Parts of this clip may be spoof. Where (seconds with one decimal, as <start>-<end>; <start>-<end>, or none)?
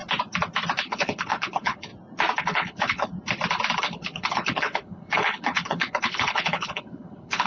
0.8-1.9; 2.4-3.1; 3.8-7.5